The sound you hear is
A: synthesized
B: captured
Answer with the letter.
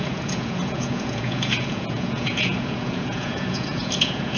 A